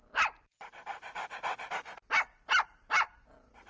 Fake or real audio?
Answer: real